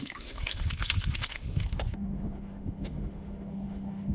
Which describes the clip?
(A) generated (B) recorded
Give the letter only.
A